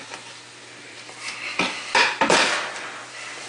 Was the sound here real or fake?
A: fake